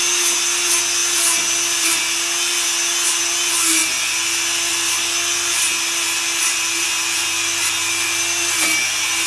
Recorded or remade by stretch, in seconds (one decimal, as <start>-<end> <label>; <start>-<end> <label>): 0.0-9.3 recorded